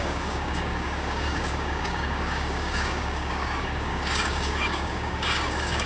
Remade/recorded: remade